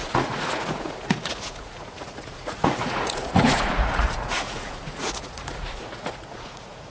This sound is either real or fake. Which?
fake